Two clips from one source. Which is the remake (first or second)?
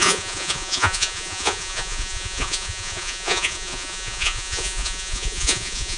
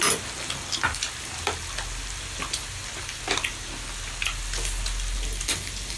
first